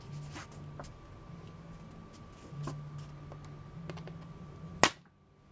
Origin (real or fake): real